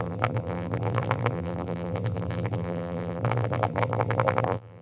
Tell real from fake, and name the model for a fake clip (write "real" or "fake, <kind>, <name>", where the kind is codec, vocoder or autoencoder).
fake, vocoder, BigVGAN v2